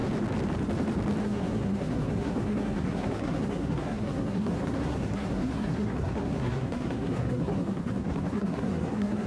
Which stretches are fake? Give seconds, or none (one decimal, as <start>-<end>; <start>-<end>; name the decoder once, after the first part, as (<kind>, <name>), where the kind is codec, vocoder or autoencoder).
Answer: 1.2-9.3 (codec, SNAC)